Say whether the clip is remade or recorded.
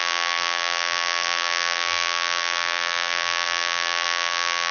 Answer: remade